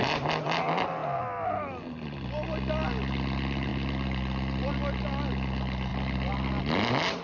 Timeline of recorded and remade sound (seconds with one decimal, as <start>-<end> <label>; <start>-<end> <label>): 0.0-7.2 recorded